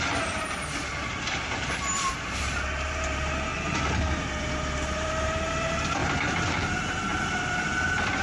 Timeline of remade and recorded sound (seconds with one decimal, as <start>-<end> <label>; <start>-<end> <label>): 0.0-3.5 remade; 3.5-4.4 recorded; 4.4-6.0 remade; 6.0-7.1 recorded; 7.1-8.2 remade